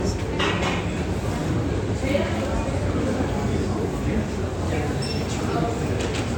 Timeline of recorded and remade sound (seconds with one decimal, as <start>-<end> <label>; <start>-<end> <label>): 0.0-1.4 recorded; 1.4-2.7 remade; 2.7-6.4 recorded